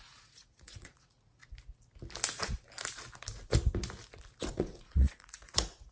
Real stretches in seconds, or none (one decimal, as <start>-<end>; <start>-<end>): 1.4-4.4